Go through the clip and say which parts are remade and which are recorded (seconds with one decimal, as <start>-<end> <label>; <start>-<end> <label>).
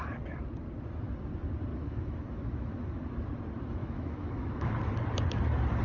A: 0.0-1.7 recorded; 1.7-3.0 remade; 3.0-3.8 recorded; 3.8-4.7 remade; 4.7-5.8 recorded